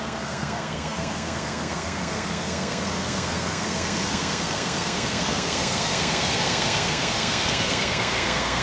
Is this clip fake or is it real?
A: fake